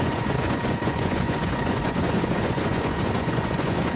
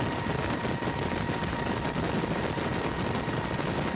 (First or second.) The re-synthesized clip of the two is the first